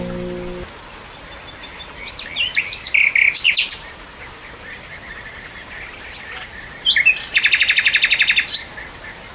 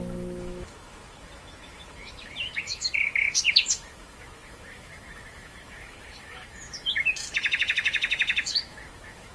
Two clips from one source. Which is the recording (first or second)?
first